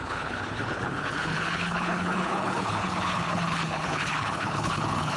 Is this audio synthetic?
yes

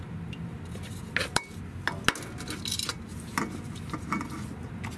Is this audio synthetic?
no